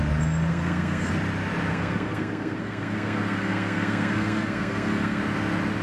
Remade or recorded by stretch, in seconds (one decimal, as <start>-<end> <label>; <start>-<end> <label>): 0.0-0.5 recorded; 0.5-1.1 remade; 1.1-1.7 recorded; 1.7-5.2 remade; 5.2-5.8 recorded